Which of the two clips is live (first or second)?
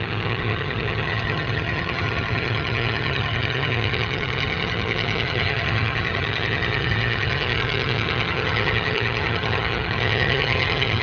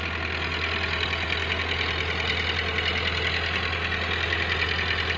second